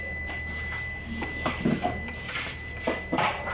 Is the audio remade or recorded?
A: recorded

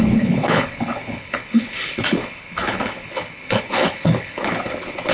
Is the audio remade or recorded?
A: remade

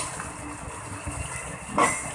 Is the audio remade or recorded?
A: recorded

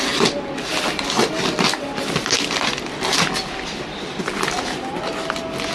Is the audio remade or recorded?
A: recorded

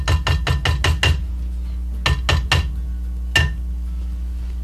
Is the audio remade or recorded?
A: recorded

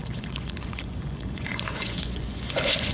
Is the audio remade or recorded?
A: remade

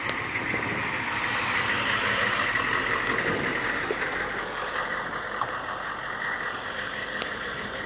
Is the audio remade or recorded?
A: recorded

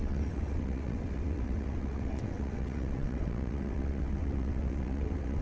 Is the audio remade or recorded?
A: remade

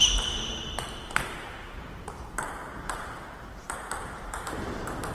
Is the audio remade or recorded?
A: remade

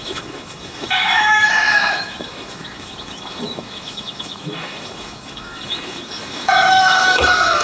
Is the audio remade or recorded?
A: remade